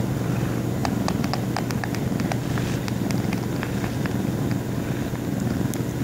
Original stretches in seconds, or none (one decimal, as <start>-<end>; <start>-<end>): 0.0-6.0